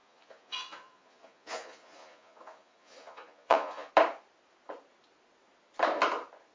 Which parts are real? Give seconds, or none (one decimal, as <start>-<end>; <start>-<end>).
3.9-6.5